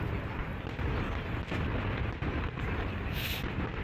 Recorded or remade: recorded